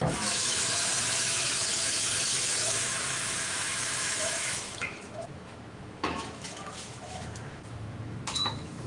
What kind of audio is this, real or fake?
fake